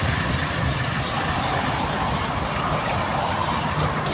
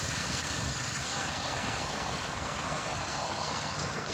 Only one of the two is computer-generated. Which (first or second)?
second